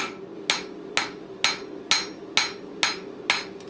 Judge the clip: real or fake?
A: real